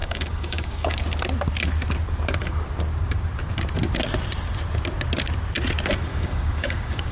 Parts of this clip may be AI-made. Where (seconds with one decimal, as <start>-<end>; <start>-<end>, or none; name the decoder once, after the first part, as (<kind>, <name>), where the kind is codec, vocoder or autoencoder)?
0.0-1.0 (codec, DAC); 6.1-7.1